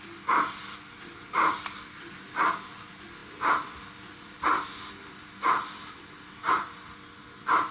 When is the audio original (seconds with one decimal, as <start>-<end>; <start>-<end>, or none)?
0.0-7.7